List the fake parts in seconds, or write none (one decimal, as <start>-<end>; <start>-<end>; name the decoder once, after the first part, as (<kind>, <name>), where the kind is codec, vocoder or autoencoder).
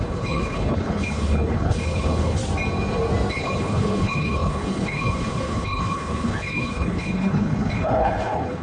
0.0-2.4 (codec, HILCodec); 3.3-8.6